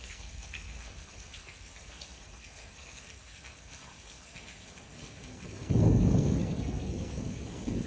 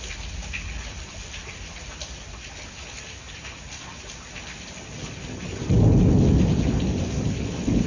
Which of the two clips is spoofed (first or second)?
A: first